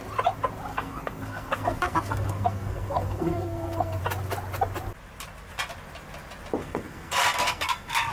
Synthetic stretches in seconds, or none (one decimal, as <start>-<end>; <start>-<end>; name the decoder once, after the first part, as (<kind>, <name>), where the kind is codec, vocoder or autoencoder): 0.7-4.0 (codec, SNAC); 6.6-8.1